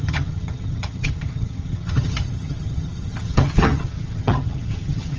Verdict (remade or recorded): remade